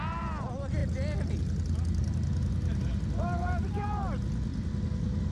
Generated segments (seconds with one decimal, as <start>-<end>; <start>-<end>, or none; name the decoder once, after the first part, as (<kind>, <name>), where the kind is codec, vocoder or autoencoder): none

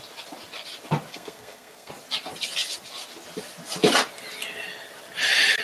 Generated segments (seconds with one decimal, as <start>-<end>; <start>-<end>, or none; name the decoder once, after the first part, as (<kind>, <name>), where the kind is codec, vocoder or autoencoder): 1.1-1.9 (codec, SNAC)

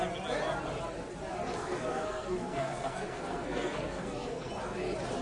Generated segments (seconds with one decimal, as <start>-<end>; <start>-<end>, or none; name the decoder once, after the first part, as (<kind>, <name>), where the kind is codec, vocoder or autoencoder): 1.6-4.5 (codec, SNAC)

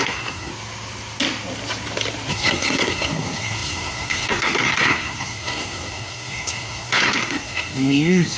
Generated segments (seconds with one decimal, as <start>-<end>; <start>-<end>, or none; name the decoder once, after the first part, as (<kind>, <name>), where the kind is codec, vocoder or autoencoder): 0.0-0.5 (codec, SNAC); 2.3-8.4

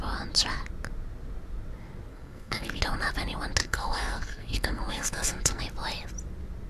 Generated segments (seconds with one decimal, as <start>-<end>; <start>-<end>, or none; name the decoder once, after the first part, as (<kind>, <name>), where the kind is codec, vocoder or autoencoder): 2.1-2.8 (codec, SNAC); 3.6-5.6